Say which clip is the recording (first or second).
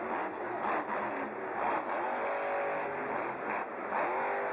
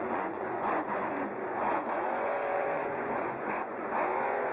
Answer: first